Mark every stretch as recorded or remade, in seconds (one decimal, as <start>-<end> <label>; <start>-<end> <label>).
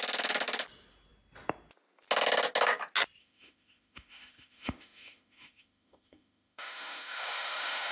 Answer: 0.0-3.2 recorded; 3.2-7.9 remade